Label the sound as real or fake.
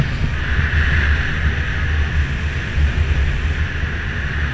real